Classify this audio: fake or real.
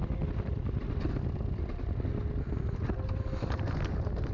real